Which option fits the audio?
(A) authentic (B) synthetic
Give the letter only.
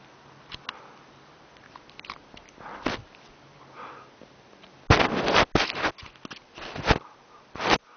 A